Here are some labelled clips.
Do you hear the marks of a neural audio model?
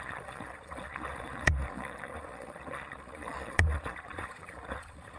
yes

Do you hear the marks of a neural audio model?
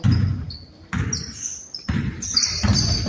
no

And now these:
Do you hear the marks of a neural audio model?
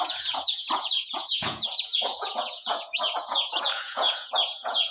yes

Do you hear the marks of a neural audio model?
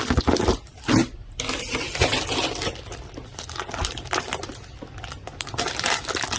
no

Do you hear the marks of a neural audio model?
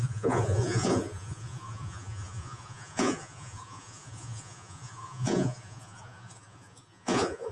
yes